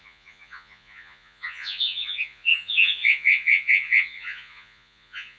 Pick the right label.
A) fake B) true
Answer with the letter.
A